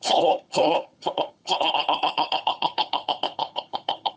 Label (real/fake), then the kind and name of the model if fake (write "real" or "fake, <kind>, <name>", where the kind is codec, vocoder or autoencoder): fake, codec, HILCodec